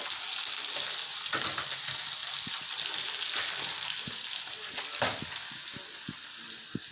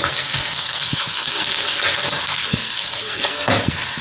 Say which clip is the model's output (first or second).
second